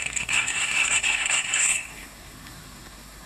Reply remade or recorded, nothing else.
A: remade